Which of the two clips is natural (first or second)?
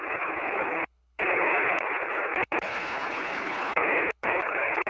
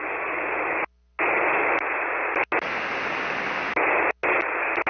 second